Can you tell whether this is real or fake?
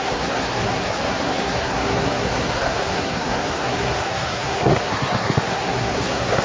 fake